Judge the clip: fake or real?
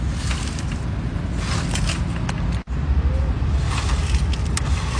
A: real